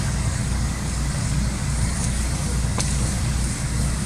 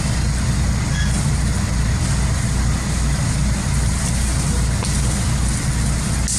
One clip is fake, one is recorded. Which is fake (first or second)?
first